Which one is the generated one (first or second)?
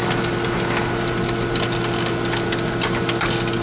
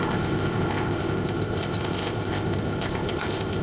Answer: second